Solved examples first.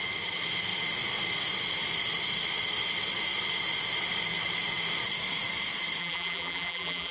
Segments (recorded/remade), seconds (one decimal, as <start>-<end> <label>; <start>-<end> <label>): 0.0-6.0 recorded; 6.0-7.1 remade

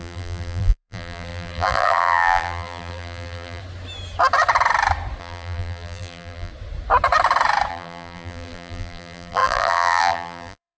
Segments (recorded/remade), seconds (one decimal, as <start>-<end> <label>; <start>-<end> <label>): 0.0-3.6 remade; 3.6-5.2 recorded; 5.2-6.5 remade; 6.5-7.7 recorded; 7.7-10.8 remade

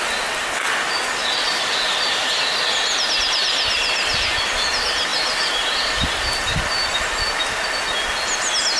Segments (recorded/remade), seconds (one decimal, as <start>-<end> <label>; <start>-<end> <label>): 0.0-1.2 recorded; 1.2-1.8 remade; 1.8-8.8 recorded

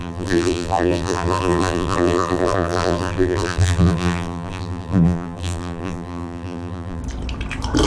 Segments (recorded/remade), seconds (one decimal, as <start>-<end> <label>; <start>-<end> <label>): 0.0-7.0 remade; 7.0-7.9 recorded

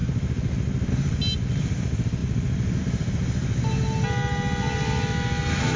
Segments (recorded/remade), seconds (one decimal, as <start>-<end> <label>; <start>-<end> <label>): 0.0-5.8 recorded

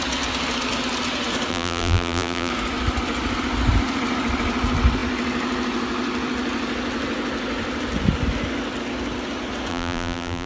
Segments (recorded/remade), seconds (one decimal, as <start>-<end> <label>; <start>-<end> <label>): 0.0-1.5 recorded; 1.5-2.5 remade; 2.5-9.7 recorded; 9.7-10.5 remade

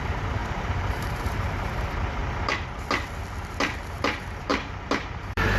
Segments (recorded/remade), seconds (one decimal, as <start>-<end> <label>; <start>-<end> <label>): 0.0-2.2 remade; 2.2-3.9 recorded; 3.9-4.5 remade; 4.5-5.1 recorded; 5.1-5.6 remade